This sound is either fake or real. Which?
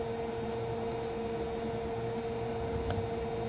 real